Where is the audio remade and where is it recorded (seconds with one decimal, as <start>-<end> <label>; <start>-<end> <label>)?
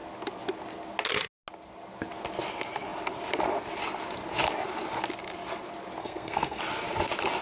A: 0.0-6.0 recorded; 6.0-6.6 remade; 6.6-7.4 recorded